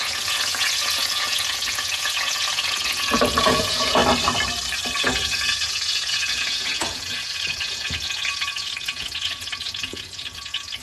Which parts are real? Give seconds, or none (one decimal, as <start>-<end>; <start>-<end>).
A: 4.0-5.0